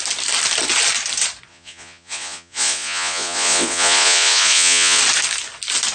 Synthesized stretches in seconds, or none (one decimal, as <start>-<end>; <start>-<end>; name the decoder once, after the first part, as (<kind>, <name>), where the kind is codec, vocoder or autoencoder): 1.5-5.0 (vocoder, Vocos)